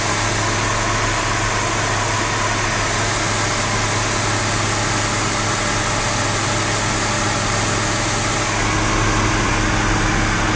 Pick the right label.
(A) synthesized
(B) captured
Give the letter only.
B